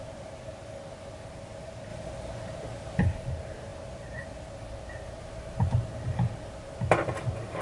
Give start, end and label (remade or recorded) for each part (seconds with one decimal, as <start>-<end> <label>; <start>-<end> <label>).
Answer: 0.0-7.6 recorded